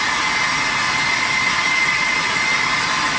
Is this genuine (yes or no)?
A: yes